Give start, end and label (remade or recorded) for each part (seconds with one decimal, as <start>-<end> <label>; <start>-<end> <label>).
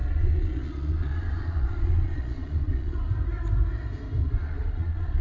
0.0-3.1 remade; 3.1-4.2 recorded; 4.2-5.2 remade